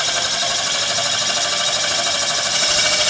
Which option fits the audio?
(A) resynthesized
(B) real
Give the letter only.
B